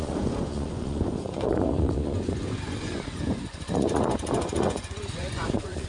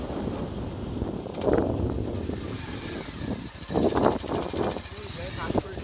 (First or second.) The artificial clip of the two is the first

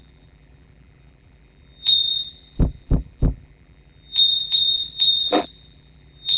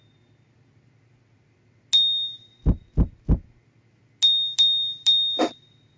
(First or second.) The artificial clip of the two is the first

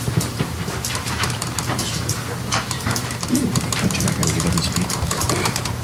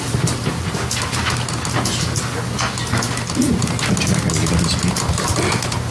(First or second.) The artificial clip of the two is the first